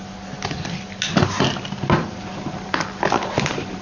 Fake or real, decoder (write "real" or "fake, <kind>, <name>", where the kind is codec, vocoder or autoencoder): real